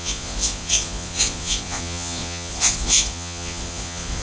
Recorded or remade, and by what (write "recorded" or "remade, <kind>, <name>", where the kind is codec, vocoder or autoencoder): remade, vocoder, Vocos